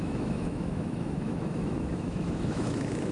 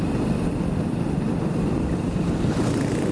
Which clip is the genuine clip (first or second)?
second